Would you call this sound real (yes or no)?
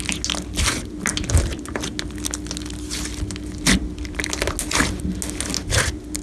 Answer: yes